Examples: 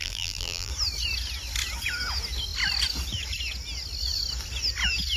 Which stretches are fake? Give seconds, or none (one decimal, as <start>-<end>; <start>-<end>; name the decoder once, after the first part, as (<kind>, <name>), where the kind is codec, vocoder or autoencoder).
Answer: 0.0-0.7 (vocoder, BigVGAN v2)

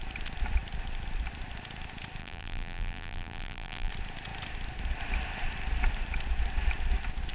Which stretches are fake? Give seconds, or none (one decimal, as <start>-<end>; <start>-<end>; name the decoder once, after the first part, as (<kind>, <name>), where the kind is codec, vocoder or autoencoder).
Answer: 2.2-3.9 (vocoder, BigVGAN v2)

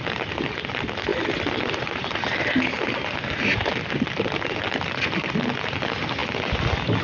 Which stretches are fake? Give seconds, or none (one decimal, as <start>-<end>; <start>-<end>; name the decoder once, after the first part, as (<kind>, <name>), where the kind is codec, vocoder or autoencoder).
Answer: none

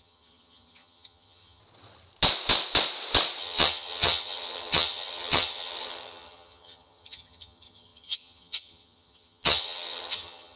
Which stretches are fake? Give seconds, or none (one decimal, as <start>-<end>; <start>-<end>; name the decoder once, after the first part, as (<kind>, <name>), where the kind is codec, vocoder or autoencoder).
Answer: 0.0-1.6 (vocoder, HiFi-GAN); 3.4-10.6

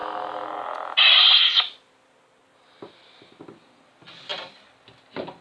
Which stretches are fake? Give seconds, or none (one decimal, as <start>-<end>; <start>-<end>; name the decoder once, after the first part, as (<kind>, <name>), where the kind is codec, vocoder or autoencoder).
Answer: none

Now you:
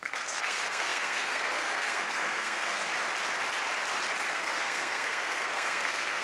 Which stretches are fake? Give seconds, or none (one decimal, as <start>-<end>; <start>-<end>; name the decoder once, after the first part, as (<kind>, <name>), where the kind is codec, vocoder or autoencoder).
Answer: 0.0-2.9 (codec, SNAC); 4.3-6.2

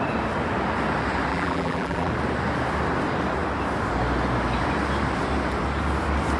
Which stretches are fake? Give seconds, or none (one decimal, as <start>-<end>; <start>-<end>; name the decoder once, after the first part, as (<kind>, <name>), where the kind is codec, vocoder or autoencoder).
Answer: 1.3-2.1 (vocoder, BigVGAN v2)

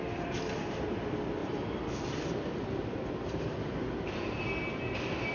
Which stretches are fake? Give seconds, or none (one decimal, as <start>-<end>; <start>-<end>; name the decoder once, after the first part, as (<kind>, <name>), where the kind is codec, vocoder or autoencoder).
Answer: 1.4-4.4 (vocoder, BigVGAN v2)